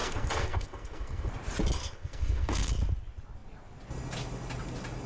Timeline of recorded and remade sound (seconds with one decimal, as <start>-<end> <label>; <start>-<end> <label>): 0.0-1.3 remade; 1.3-1.8 recorded; 1.8-2.7 remade; 2.7-5.1 recorded